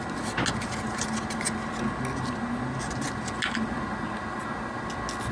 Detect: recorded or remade recorded